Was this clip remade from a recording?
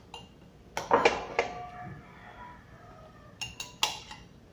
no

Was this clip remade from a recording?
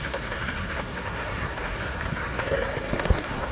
yes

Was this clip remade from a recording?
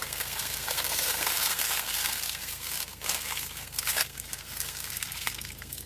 yes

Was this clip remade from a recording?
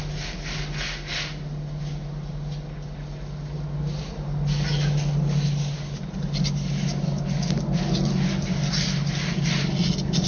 no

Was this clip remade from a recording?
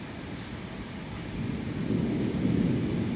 no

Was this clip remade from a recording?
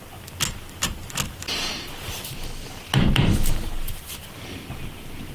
no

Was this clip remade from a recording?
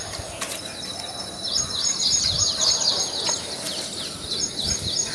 no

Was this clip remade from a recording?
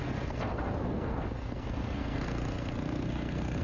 yes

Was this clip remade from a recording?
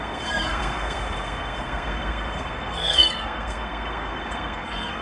yes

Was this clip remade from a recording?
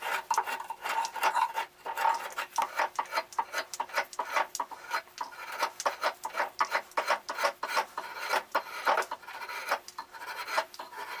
no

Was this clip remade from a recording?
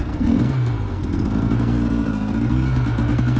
yes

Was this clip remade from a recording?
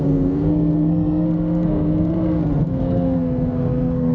yes